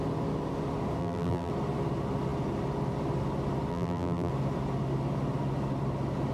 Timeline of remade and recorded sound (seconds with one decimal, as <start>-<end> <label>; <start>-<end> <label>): 0.0-1.0 recorded; 1.0-1.5 remade; 1.5-3.7 recorded; 3.7-4.3 remade; 4.3-6.3 recorded